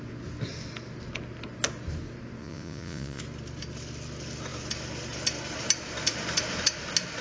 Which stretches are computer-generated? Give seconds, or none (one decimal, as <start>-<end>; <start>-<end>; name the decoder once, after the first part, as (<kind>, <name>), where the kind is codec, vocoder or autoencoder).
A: 2.4-3.2 (vocoder, Vocos)